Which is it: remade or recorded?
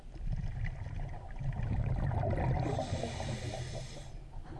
recorded